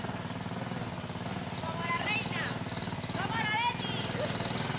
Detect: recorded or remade recorded